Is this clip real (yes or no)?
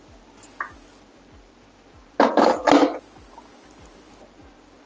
yes